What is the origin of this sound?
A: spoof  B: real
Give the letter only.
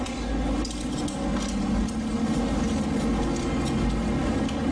B